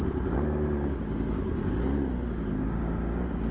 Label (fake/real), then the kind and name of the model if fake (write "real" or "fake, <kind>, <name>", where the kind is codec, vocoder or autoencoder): real